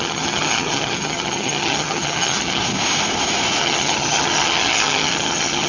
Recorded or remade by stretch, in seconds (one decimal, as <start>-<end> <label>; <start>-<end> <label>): 0.0-2.6 remade; 2.6-3.6 recorded; 3.6-5.7 remade